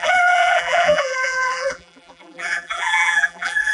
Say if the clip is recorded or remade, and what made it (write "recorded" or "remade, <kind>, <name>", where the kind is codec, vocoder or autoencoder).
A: remade, vocoder, BigVGAN v2